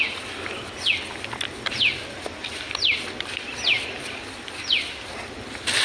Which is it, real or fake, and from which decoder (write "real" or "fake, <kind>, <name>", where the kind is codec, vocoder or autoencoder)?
real